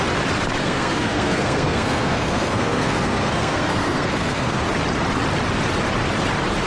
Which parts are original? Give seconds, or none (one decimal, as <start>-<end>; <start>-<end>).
0.0-0.6; 4.6-6.7